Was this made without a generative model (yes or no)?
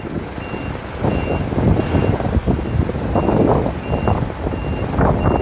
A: yes